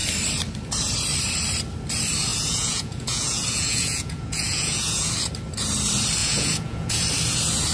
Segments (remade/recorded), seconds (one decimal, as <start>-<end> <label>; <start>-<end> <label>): 0.0-2.3 recorded; 2.3-5.1 remade; 5.1-6.2 recorded; 6.2-7.0 remade; 7.0-7.7 recorded